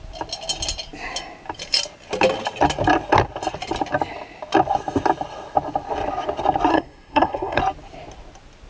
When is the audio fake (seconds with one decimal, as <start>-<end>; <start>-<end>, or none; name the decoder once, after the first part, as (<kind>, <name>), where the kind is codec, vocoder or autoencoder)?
6.7-7.6 (codec, SNAC)

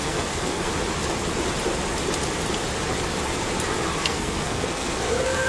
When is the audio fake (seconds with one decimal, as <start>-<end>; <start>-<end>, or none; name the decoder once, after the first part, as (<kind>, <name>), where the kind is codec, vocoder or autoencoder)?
0.0-0.7 (codec, SNAC); 4.0-5.5

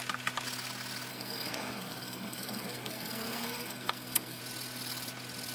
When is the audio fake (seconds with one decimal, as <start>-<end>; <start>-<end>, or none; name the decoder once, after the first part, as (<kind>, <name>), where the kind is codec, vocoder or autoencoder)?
1.1-4.4 (codec, SNAC)

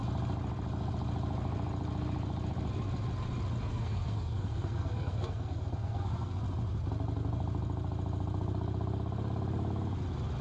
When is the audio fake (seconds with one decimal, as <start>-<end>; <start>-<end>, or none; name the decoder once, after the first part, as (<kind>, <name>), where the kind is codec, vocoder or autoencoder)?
3.7-6.4 (codec, SNAC)

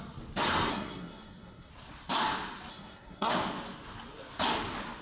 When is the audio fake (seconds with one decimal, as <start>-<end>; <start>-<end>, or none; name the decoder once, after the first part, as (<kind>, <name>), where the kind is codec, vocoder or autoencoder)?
0.7-1.7 (codec, SNAC); 2.7-3.3

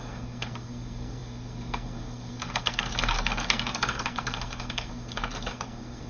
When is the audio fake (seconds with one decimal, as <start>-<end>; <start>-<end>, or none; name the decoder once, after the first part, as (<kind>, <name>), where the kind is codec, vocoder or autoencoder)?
0.0-6.1 (codec, SNAC)

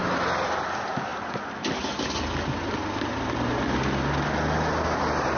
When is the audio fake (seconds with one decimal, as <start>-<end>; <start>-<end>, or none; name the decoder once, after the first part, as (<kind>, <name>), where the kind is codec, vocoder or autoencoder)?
none

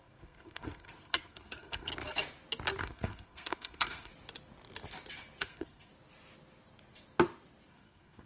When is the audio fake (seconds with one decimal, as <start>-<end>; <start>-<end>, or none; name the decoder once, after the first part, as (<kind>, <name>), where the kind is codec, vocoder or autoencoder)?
0.0-1.9 (codec, SNAC); 2.8-4.1; 5.4-5.9; 7.7-8.3